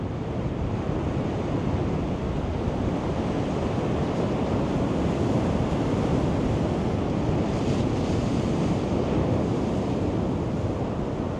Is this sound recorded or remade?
recorded